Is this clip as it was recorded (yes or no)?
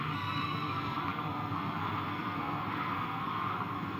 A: no